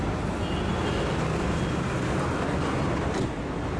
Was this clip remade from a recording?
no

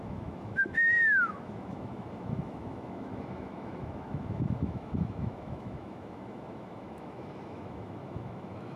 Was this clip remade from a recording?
yes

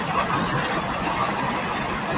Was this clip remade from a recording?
no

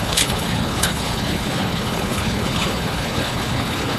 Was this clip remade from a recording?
yes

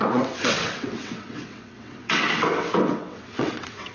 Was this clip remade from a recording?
yes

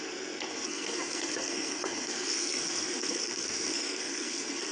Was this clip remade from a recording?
yes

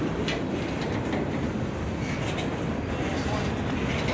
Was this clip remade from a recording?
no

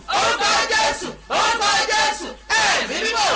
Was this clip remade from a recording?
no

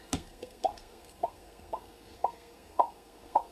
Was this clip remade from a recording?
yes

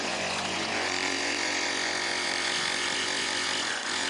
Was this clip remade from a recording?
yes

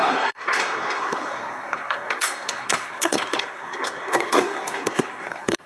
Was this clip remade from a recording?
yes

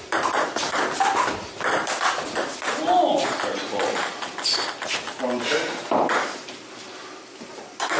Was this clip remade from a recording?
no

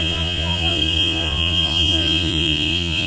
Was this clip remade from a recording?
yes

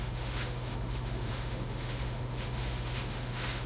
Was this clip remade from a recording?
yes